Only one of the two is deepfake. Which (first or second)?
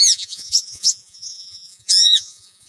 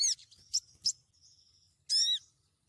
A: first